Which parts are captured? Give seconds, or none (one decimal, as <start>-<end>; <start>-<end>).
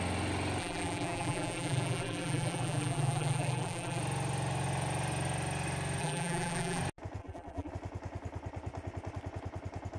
0.0-0.6; 4.0-6.0; 6.8-7.2; 7.7-10.0